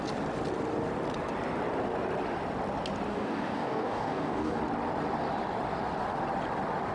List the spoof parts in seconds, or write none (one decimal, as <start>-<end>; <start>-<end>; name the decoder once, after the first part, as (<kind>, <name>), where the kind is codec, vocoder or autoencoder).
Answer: 3.1-4.6 (codec, DAC)